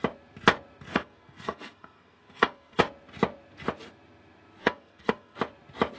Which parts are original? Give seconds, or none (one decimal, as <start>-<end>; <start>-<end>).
0.0-0.9; 2.8-4.6; 5.4-6.0